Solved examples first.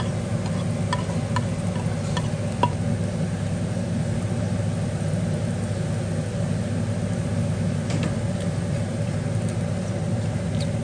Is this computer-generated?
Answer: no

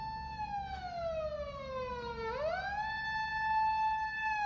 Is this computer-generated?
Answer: no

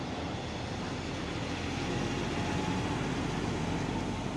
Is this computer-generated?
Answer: no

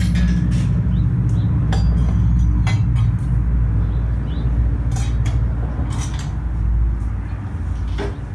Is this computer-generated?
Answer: no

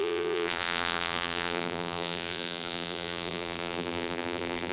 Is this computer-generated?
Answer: yes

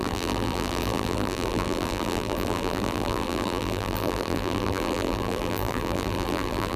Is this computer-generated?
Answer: yes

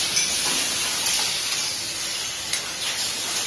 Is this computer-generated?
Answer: no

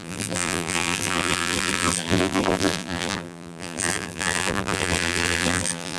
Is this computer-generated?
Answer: yes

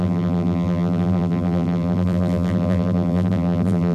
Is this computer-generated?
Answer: yes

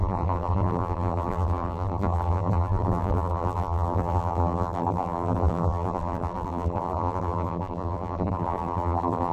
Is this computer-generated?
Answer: yes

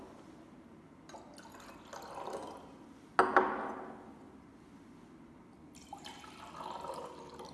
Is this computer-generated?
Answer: no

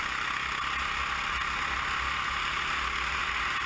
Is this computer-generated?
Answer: no